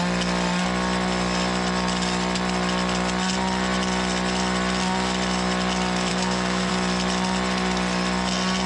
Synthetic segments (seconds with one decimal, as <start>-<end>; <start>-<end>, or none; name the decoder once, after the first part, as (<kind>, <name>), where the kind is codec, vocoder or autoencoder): 6.1-6.7 (codec, SNAC)